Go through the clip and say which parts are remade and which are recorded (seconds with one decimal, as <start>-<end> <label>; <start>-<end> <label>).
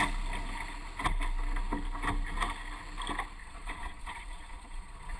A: 0.0-3.4 recorded; 3.4-5.2 remade